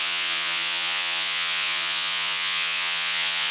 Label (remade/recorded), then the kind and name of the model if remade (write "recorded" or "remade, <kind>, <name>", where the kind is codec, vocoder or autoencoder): remade, vocoder, Vocos